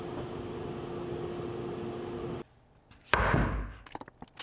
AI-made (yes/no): no